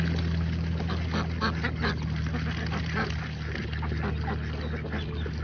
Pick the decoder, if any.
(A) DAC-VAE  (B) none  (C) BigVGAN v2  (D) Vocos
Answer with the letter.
B